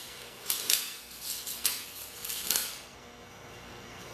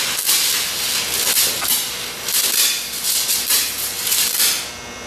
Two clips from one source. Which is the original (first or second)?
second